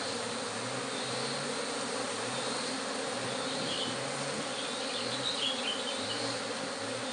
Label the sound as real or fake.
real